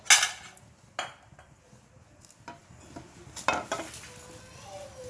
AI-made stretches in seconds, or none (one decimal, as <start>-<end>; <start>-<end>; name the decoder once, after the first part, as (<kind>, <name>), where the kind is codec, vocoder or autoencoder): none